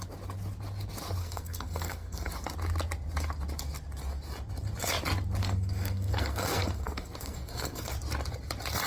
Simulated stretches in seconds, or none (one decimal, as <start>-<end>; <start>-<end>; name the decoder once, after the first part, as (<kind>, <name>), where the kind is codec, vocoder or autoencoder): 1.2-2.3 (codec, SNAC); 5.4-7.9